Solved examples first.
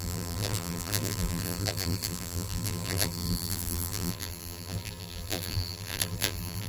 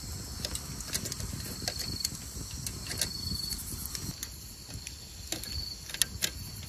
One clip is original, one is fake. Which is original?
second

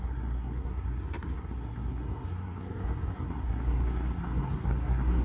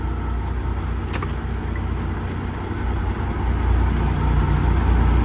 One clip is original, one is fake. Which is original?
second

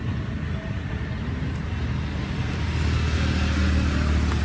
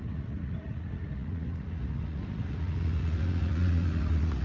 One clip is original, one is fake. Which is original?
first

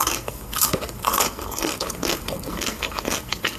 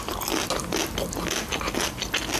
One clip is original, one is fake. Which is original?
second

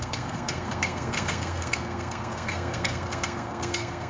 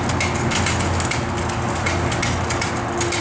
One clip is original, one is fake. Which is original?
second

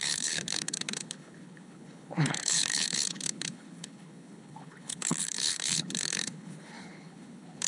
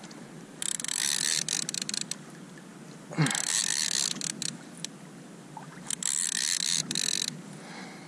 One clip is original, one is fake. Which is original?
second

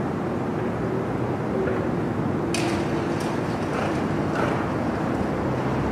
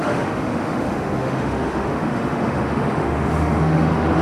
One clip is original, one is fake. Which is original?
first